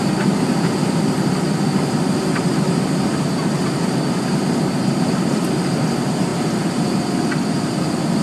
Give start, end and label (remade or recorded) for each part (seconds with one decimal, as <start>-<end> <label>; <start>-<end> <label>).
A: 0.0-8.2 recorded